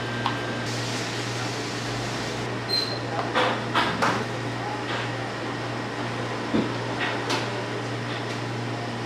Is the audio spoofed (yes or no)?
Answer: no